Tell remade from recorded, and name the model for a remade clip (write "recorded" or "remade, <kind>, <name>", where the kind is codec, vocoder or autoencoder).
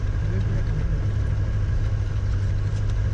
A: recorded